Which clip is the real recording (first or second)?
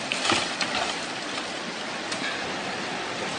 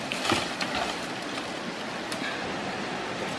second